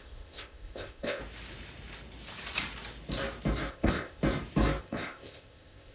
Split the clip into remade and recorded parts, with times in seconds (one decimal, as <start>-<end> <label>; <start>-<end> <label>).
0.0-1.2 remade; 1.2-3.7 recorded; 3.7-4.2 remade; 4.2-4.8 recorded; 4.8-5.9 remade